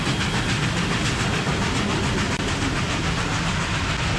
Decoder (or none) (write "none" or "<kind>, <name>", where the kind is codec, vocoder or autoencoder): none